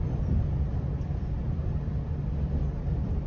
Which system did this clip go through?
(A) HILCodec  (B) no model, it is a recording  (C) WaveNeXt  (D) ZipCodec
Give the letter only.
B